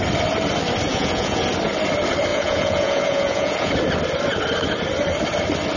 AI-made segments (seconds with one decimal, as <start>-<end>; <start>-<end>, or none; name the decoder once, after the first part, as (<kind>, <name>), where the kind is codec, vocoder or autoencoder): 0.9-1.4 (vocoder, Vocos); 2.3-3.7